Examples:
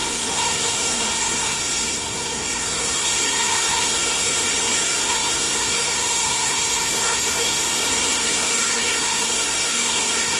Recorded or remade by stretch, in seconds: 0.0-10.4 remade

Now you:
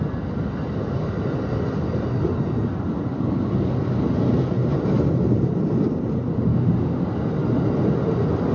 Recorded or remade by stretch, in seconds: 0.0-6.5 recorded; 6.5-7.0 remade; 7.0-8.5 recorded

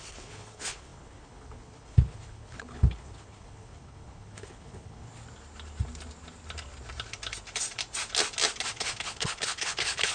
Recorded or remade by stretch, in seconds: 0.0-5.1 remade; 5.1-8.7 recorded; 8.7-10.1 remade

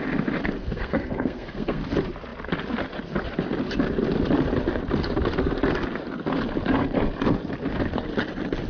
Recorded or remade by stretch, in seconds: 0.0-0.6 recorded; 0.6-1.8 remade; 1.8-8.7 recorded

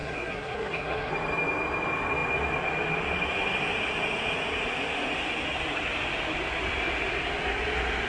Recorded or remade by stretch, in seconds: 0.0-1.1 remade; 1.1-8.1 recorded

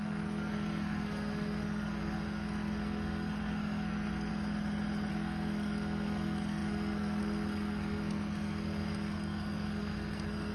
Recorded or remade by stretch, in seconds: 0.0-4.3 remade; 4.3-5.1 recorded; 5.1-10.5 remade

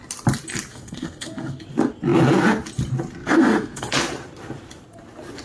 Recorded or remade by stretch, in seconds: 0.0-0.7 recorded; 0.7-1.6 remade; 1.6-3.2 recorded; 3.2-3.9 remade; 3.9-5.4 recorded

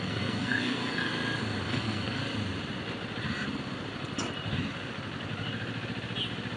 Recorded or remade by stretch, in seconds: 0.0-1.1 remade; 1.1-1.7 recorded; 1.7-2.2 remade; 2.2-6.6 recorded